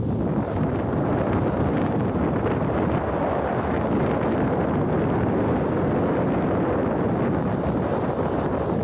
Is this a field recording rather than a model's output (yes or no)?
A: yes